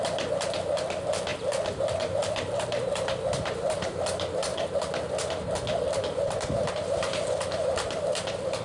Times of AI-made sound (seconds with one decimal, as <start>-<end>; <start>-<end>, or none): none